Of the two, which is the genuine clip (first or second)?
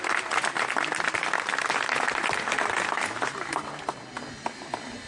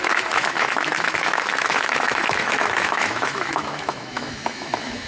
first